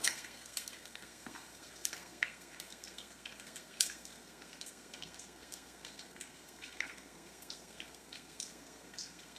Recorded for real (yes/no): no